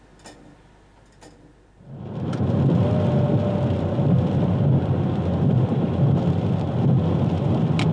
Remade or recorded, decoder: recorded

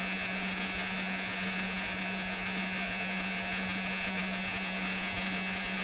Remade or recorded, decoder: remade, vocoder, Vocos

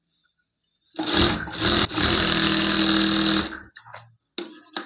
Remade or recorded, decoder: recorded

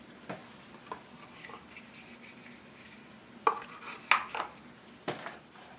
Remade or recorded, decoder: recorded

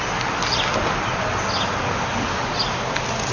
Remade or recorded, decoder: recorded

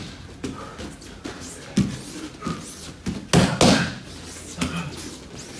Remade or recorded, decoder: recorded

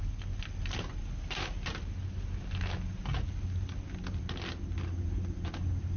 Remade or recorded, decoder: recorded